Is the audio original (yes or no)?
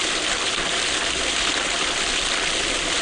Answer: yes